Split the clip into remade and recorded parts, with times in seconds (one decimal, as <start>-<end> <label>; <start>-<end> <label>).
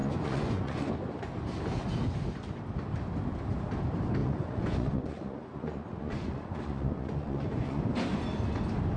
0.0-0.9 remade; 0.9-4.2 recorded; 4.2-7.8 remade; 7.8-9.0 recorded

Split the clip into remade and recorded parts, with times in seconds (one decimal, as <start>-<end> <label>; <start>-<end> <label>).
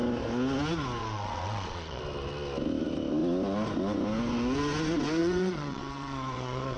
0.0-1.0 recorded; 1.0-2.0 remade; 2.0-5.2 recorded; 5.2-6.8 remade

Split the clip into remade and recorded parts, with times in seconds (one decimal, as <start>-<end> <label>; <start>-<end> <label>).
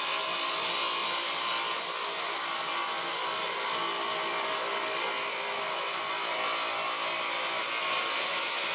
0.0-8.7 recorded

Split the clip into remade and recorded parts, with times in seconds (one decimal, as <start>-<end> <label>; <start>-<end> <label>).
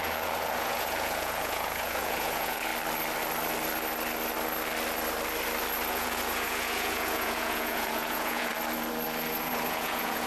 0.0-2.7 remade; 2.7-5.9 recorded; 5.9-8.5 remade; 8.5-9.4 recorded; 9.4-10.3 remade